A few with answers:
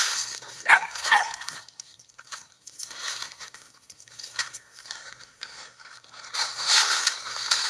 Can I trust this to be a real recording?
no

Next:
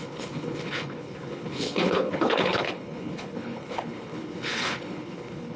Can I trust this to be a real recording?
no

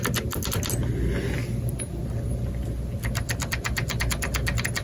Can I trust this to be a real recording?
yes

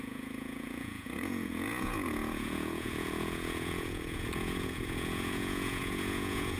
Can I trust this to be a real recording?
no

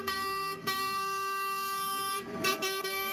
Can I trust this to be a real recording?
no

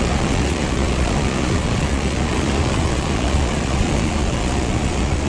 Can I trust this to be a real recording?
no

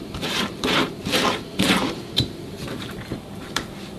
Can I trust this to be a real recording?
no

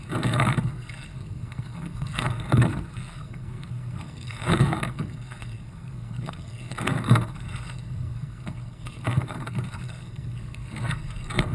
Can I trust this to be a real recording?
no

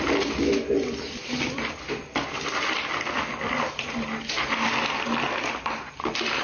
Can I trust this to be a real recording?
yes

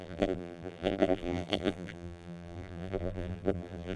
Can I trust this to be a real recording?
no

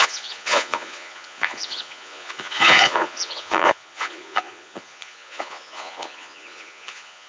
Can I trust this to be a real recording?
no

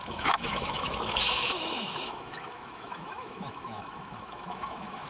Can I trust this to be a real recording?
no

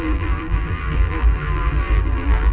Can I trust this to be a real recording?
no